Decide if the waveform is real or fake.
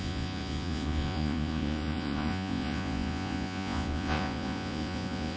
fake